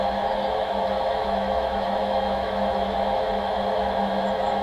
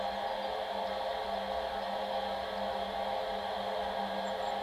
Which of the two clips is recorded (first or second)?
second